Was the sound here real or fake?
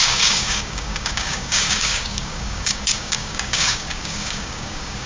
fake